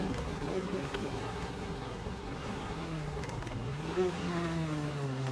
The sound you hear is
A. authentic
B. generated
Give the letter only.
B